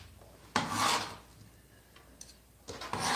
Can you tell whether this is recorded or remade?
recorded